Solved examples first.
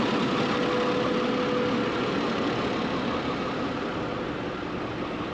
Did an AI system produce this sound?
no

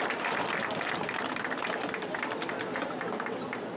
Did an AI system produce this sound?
no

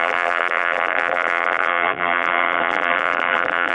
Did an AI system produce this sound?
yes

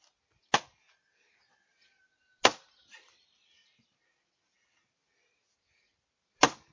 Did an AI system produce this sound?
no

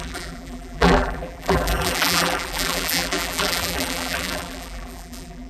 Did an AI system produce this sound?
yes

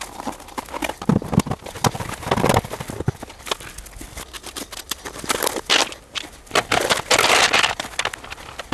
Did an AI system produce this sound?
no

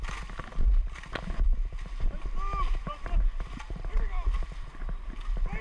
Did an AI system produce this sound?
no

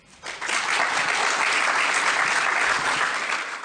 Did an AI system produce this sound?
yes